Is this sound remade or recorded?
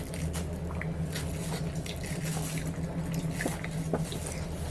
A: recorded